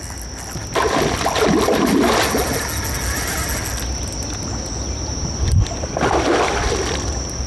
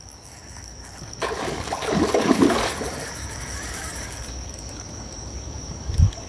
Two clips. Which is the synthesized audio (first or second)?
second